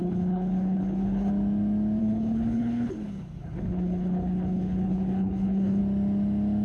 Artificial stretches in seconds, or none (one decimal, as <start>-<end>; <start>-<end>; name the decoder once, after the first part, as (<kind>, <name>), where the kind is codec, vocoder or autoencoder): 0.0-1.3 (codec, HILCodec); 2.0-5.8